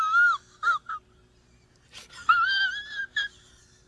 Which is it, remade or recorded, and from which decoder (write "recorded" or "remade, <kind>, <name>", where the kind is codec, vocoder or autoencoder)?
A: recorded